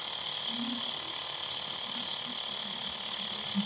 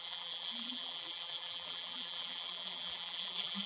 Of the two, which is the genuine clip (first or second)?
first